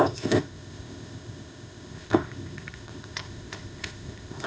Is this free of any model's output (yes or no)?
no